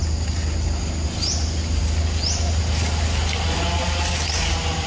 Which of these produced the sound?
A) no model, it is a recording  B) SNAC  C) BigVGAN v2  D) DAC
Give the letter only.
A